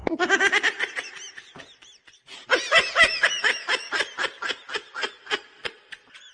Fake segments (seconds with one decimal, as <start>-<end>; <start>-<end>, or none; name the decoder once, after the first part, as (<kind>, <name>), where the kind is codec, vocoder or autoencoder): 3.1-3.9 (autoencoder, DAC-VAE)